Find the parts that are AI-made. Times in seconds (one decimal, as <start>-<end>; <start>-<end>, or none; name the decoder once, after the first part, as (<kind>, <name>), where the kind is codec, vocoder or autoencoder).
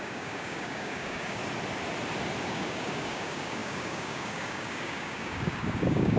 0.0-1.4 (codec, DAC); 2.4-6.2